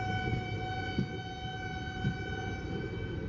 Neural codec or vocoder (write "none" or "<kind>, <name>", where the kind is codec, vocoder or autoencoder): none